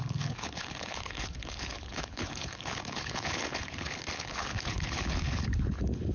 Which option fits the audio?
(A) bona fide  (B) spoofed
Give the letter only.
B